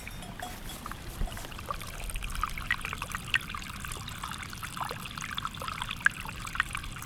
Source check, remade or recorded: recorded